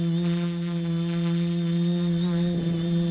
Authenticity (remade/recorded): recorded